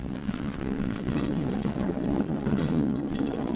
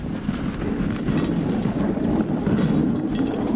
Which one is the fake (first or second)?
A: first